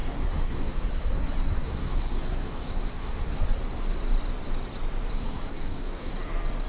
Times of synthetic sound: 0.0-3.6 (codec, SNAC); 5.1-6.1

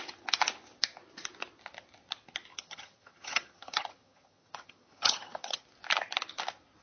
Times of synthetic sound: 2.5-5.6 (vocoder, HiFi-GAN)